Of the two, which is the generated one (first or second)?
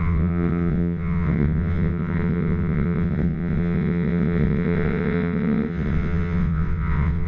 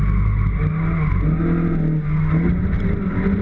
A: first